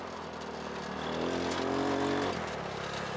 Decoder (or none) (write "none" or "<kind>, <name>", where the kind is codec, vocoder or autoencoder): none